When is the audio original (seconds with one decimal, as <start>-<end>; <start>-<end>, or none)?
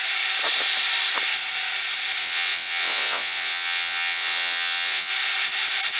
0.0-2.2; 5.1-6.0